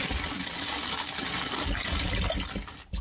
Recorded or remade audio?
recorded